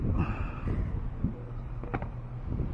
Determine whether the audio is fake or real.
fake